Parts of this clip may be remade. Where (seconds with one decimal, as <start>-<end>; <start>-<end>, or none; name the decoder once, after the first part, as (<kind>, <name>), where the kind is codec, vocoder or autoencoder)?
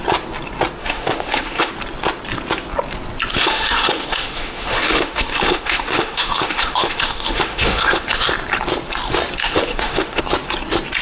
0.8-1.7 (autoencoder, DAC-VAE); 3.3-8.3; 9.4-10.2